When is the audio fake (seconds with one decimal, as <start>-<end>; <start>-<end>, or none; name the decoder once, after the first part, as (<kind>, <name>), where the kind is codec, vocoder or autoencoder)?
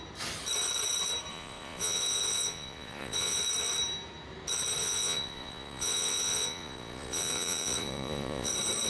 1.3-3.4 (vocoder, Vocos); 4.8-8.5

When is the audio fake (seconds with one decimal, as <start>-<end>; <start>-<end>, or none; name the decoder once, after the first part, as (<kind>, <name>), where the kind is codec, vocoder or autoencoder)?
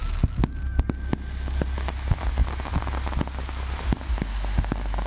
none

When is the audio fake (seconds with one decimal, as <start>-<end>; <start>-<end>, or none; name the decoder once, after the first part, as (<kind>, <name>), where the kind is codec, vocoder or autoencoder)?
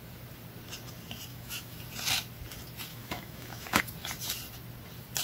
1.3-1.8 (autoencoder, DAC-VAE); 2.9-3.8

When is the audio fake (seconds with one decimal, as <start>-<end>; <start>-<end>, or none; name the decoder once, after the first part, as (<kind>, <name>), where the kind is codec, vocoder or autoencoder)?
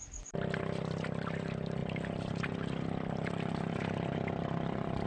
1.8-3.3 (vocoder, BigVGAN v2)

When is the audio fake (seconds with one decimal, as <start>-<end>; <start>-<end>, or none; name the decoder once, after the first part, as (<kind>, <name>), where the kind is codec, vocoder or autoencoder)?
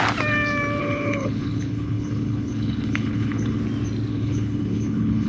0.8-3.6 (codec, HILCodec); 4.1-5.3